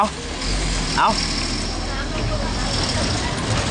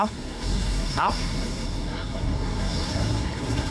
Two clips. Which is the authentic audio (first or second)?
first